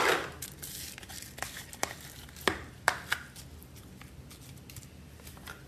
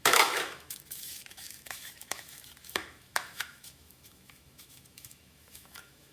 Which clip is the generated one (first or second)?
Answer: second